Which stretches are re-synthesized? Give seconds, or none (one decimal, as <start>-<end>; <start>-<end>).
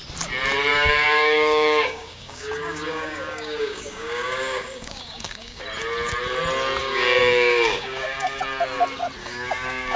0.7-5.6; 6.8-8.4; 9.2-10.0